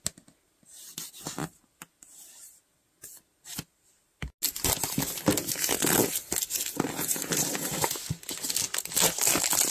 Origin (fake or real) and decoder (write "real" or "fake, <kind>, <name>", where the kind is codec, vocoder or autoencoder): real